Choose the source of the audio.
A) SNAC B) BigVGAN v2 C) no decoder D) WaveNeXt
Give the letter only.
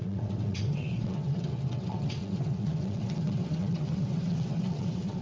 D